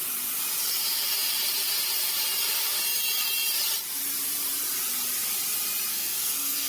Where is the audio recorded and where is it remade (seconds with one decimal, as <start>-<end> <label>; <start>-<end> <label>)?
0.0-5.9 recorded; 5.9-6.7 remade